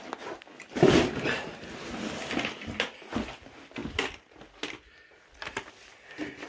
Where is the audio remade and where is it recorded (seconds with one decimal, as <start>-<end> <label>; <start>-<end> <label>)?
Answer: 0.0-6.5 recorded